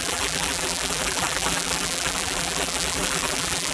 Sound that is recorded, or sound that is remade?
remade